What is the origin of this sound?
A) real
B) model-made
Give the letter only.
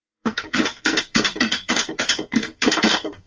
B